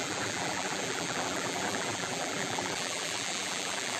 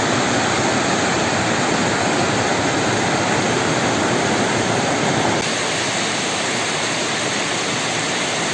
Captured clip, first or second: second